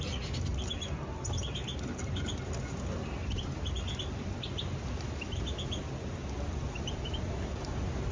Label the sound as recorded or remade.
recorded